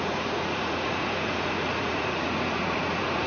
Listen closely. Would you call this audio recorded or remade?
remade